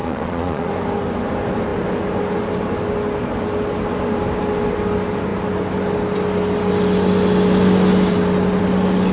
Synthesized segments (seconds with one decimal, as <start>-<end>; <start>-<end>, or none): 0.0-0.7